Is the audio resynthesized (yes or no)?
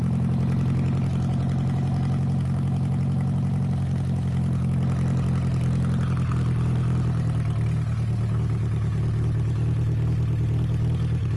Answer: no